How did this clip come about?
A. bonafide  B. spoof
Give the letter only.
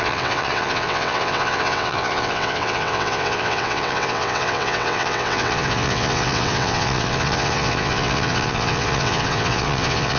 B